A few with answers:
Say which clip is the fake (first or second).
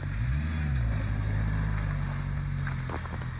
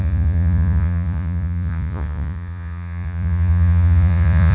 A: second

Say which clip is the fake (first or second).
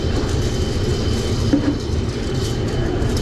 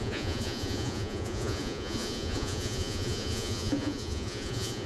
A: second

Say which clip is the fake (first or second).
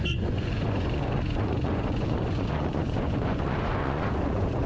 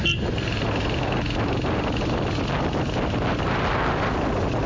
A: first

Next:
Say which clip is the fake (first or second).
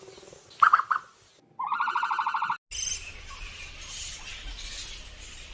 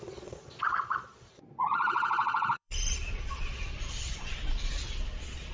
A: second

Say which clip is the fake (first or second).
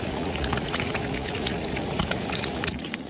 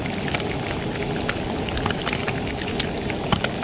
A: first